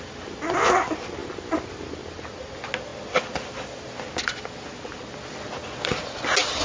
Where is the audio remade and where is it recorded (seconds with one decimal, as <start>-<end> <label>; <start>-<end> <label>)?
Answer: 0.0-6.6 recorded